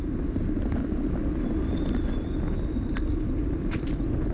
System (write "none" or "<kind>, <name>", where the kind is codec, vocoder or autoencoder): none